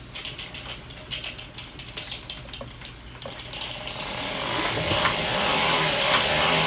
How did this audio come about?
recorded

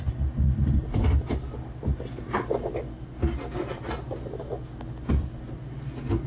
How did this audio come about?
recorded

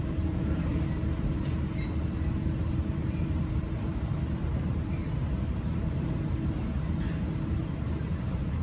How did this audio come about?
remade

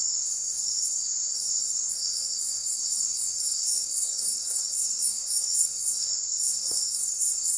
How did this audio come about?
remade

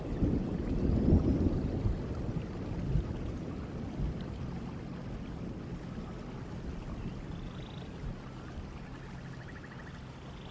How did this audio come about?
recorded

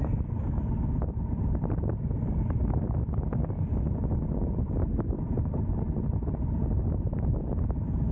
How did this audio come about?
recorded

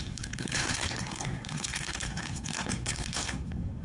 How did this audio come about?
remade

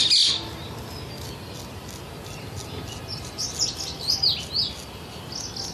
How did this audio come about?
recorded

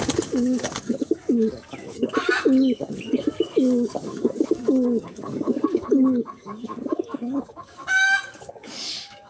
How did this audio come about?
remade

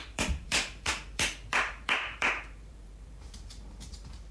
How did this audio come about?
remade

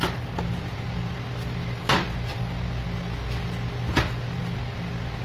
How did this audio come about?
recorded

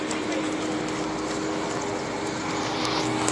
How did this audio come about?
recorded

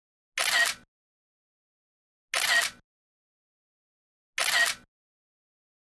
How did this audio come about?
recorded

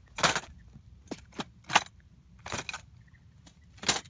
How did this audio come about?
recorded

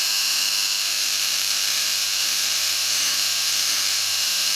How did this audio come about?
remade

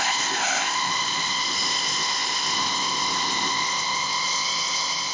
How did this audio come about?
remade